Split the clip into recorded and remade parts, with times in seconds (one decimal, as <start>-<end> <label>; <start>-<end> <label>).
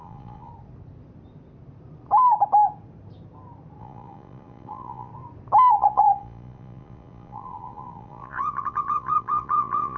0.0-0.5 remade; 0.5-3.8 recorded; 3.8-5.1 remade; 5.1-5.7 recorded; 5.7-10.0 remade